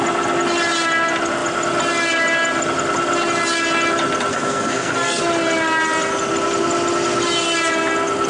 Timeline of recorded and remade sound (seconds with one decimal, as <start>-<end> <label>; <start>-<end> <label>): 0.0-4.3 recorded; 4.3-5.2 remade; 5.2-8.3 recorded